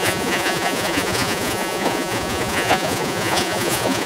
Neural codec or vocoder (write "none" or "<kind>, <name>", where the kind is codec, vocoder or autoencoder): vocoder, Vocos